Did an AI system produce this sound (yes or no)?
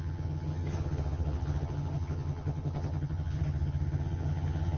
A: yes